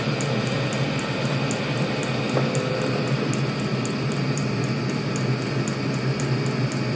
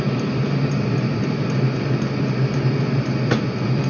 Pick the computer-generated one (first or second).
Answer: second